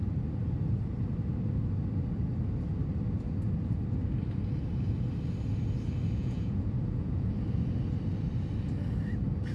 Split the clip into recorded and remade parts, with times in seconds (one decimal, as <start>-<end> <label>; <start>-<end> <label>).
0.0-6.2 recorded; 6.2-7.3 remade; 7.3-9.5 recorded